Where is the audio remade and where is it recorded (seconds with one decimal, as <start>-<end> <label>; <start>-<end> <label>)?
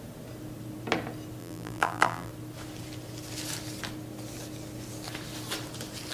0.0-1.4 recorded; 1.4-2.3 remade; 2.3-6.1 recorded